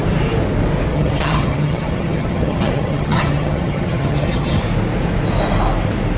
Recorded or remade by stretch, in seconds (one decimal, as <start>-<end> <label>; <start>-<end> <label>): 0.0-0.9 recorded; 0.9-4.6 remade; 4.6-6.2 recorded